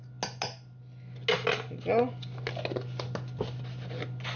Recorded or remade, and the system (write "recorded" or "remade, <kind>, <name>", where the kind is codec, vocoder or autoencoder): recorded